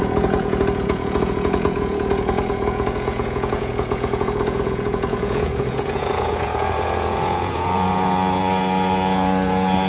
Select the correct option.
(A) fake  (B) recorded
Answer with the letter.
A